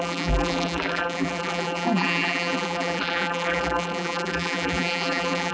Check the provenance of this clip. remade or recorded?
remade